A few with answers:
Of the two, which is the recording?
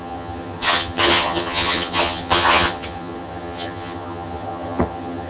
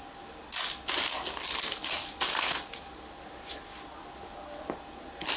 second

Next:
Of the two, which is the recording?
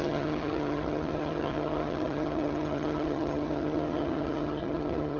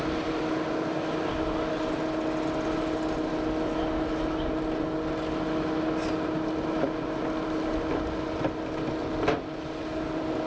second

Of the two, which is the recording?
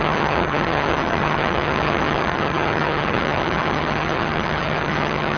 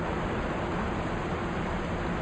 second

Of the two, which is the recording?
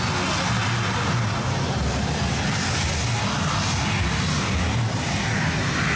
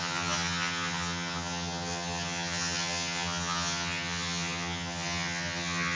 first